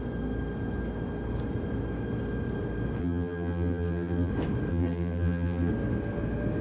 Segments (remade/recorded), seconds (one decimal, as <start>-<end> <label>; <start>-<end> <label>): 0.0-3.0 recorded; 3.0-4.3 remade; 4.3-4.7 recorded; 4.7-5.7 remade; 5.7-6.6 recorded